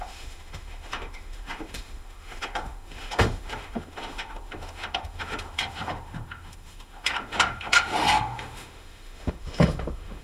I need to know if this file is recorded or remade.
remade